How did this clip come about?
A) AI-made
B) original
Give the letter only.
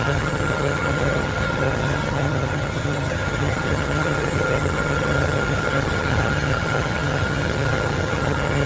A